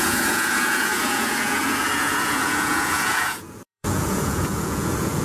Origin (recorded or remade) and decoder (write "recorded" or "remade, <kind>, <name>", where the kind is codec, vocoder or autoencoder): remade, vocoder, Vocos